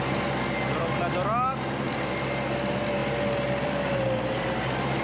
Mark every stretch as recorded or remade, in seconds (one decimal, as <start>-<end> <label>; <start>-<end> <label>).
0.0-3.0 recorded; 3.0-4.6 remade; 4.6-5.0 recorded

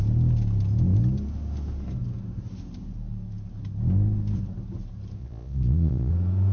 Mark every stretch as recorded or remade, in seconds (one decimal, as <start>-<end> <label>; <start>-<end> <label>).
0.0-5.2 recorded; 5.2-6.1 remade; 6.1-6.5 recorded

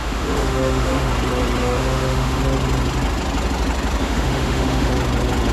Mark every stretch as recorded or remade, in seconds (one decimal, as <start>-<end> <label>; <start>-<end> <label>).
0.0-1.1 remade; 1.1-1.6 recorded; 1.6-2.4 remade; 2.4-4.0 recorded; 4.0-4.9 remade; 4.9-5.5 recorded

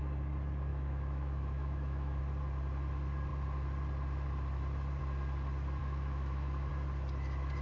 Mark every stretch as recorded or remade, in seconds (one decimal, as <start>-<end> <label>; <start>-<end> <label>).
0.0-0.7 recorded; 0.7-2.2 remade; 2.2-5.8 recorded; 5.8-6.7 remade; 6.7-7.6 recorded

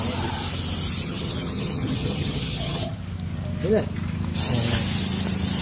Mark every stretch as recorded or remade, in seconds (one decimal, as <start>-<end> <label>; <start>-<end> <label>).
0.0-1.0 recorded; 1.0-3.0 remade; 3.0-5.6 recorded

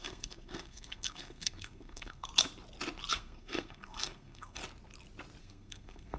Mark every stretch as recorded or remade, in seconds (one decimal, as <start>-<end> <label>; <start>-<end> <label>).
0.0-2.3 remade; 2.3-3.1 recorded; 3.1-4.6 remade; 4.6-5.4 recorded; 5.4-6.2 remade

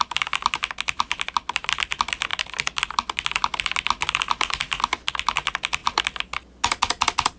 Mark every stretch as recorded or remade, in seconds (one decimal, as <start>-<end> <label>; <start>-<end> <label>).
0.0-7.4 recorded